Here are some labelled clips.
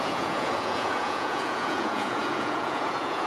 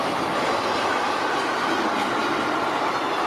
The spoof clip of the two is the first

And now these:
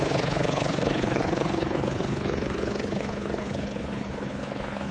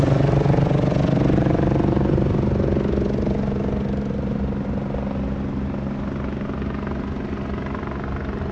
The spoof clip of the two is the first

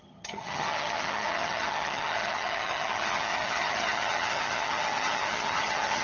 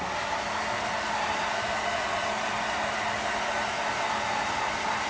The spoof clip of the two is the first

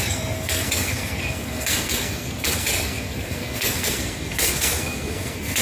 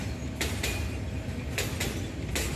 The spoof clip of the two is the first